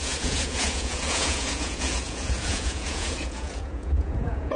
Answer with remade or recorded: remade